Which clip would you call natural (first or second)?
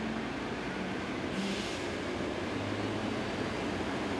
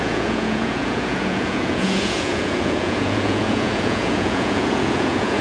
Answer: first